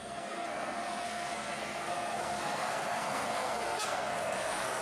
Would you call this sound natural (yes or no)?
no